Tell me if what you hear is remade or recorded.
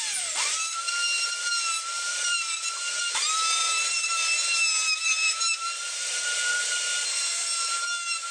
remade